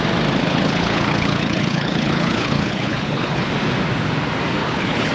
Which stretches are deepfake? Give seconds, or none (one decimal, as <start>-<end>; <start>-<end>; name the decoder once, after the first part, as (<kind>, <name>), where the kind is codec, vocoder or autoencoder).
0.4-3.5 (codec, HILCodec); 4.6-5.1